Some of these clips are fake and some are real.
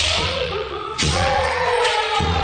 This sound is fake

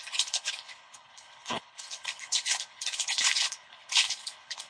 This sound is fake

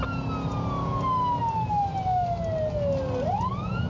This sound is real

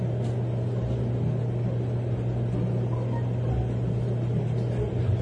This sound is real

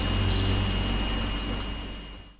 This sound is real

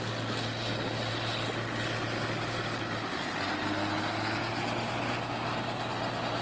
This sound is real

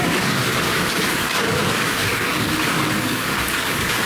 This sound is fake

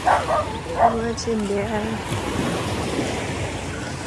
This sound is real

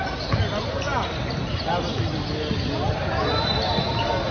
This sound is real